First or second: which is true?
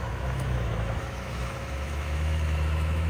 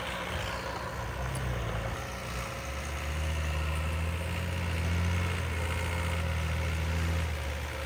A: second